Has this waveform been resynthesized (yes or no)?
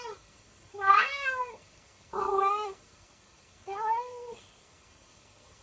yes